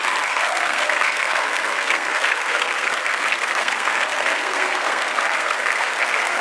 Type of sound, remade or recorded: remade